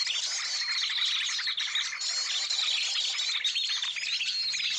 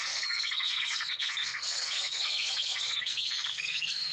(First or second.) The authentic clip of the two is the first